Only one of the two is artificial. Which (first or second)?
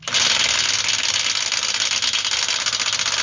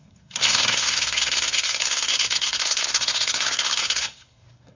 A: second